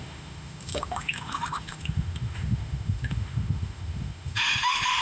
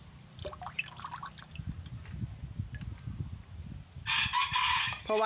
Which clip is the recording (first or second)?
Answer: second